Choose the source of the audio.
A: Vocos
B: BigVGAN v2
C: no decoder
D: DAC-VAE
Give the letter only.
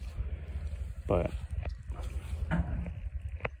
C